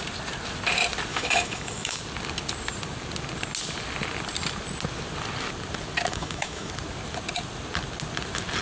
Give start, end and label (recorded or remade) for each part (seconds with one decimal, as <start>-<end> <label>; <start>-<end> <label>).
0.0-1.1 recorded; 1.1-2.0 remade; 2.0-6.1 recorded; 6.1-6.7 remade; 6.7-8.6 recorded